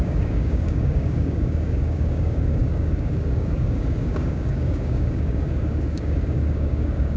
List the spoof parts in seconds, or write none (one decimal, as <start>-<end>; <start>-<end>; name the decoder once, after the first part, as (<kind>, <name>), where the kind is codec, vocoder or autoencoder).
0.0-7.2 (codec, DAC)